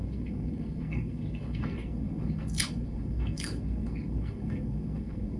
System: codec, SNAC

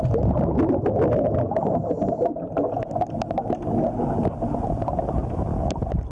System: none